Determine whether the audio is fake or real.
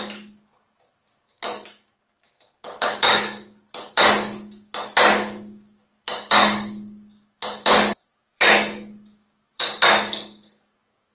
fake